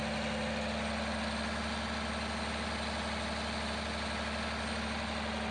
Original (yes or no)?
yes